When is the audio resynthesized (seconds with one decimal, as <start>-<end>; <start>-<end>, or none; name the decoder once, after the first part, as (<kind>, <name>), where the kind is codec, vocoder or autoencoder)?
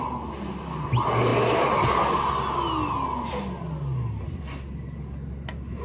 none